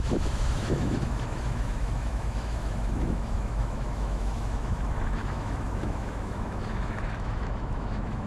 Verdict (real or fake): fake